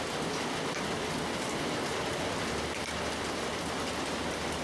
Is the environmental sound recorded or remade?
recorded